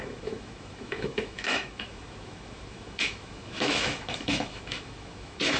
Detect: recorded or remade remade